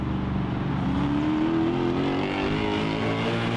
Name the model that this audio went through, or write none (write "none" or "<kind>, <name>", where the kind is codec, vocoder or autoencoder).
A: none